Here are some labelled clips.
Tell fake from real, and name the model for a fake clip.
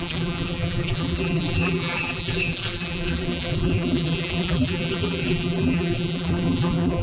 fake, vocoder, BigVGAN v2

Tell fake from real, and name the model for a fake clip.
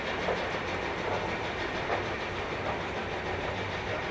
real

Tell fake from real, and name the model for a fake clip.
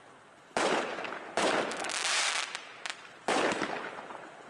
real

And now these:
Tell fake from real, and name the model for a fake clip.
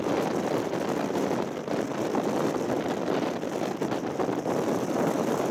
real